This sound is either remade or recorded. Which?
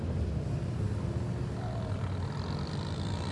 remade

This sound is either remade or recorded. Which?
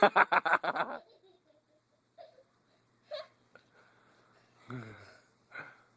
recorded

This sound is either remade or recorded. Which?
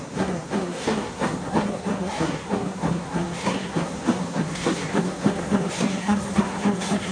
remade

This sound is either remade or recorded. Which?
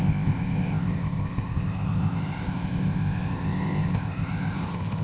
remade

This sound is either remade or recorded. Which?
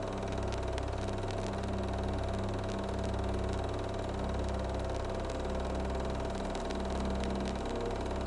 recorded